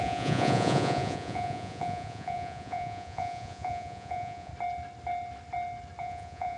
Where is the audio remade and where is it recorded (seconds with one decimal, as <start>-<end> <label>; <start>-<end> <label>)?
0.0-4.5 remade; 4.5-6.0 recorded; 6.0-6.6 remade